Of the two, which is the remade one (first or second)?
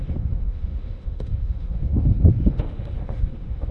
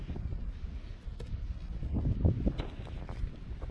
first